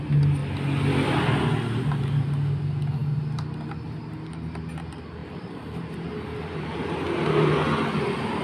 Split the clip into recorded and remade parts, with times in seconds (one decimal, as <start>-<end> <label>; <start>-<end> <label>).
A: 0.0-5.2 recorded; 5.2-6.1 remade; 6.1-8.4 recorded